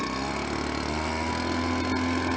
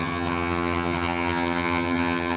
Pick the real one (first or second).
first